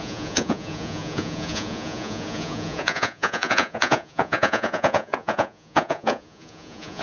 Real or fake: fake